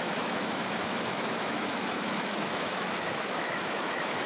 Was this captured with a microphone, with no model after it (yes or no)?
no